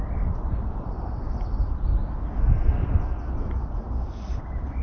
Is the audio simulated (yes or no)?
no